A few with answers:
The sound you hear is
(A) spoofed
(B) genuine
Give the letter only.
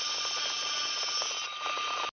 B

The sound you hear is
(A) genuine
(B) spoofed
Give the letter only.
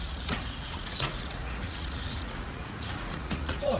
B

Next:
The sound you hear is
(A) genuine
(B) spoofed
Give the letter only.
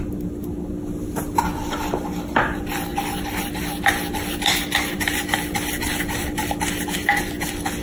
A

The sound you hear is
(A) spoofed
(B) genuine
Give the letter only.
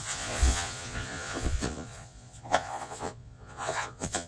A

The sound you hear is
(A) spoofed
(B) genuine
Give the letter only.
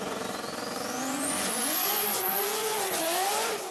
A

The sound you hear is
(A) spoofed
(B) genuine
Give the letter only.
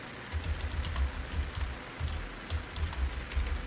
B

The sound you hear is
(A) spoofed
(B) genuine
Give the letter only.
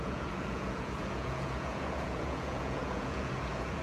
A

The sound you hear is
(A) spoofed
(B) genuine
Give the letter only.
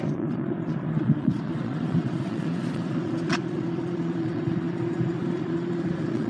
A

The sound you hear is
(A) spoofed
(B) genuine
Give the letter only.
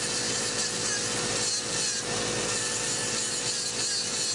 B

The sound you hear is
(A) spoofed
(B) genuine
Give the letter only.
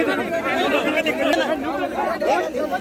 B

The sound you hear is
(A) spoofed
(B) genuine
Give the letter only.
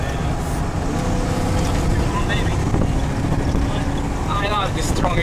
B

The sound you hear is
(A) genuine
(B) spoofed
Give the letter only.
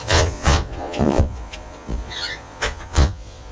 B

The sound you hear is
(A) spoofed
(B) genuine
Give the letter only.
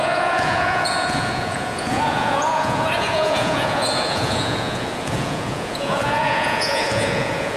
A